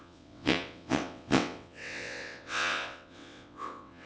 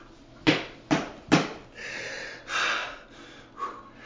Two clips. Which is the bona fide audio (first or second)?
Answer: second